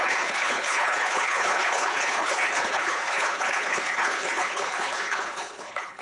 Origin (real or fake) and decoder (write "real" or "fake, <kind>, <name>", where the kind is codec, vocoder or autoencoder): fake, codec, HILCodec